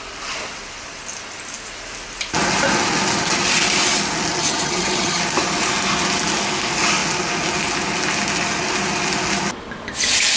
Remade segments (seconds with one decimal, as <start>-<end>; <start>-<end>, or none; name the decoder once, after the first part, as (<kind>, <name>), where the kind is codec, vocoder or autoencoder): 4.4-5.2 (vocoder, HiFi-GAN)

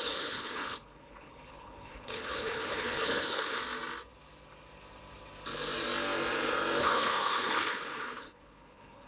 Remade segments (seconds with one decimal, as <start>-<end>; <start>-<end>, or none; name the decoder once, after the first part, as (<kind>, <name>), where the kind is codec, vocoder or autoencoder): 0.0-3.6 (codec, HILCodec); 6.8-9.1

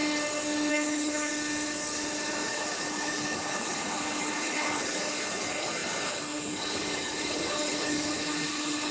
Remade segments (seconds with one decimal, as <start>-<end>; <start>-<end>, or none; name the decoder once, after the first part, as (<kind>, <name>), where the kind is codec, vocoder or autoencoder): 0.7-1.3 (codec, HILCodec); 2.5-8.9

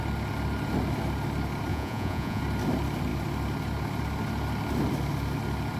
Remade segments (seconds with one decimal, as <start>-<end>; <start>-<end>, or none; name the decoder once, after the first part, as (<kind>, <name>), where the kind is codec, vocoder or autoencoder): 1.7-2.4 (vocoder, Vocos)

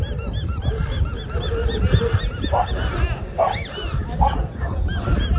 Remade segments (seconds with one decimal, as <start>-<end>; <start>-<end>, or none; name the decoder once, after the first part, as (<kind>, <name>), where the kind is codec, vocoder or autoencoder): none